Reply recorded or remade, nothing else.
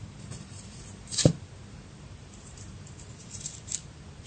remade